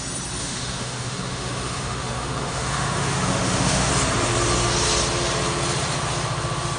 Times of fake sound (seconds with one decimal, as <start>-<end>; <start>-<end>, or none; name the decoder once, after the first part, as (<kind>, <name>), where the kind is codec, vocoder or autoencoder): 0.4-3.9 (autoencoder, DAC-VAE)